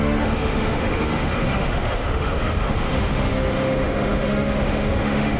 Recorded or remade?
remade